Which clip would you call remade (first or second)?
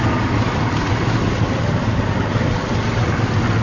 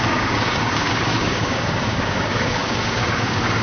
second